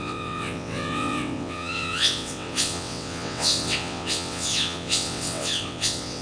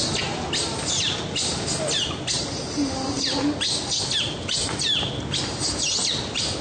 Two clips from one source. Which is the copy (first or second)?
first